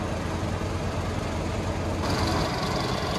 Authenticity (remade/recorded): recorded